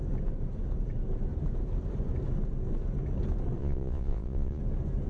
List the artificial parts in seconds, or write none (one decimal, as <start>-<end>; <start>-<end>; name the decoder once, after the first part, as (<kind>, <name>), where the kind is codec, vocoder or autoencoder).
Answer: 3.6-4.6 (vocoder, Vocos)